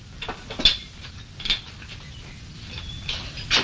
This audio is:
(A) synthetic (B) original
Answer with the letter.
B